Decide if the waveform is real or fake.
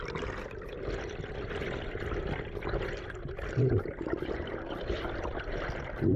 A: real